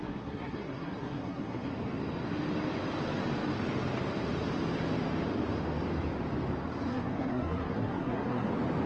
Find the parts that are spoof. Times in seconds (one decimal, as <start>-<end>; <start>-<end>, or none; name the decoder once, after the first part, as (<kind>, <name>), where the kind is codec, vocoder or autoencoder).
0.0-1.7 (codec, SNAC); 6.9-8.5